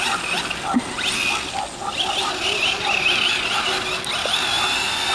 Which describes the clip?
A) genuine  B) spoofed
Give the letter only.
A